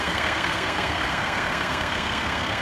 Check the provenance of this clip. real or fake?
fake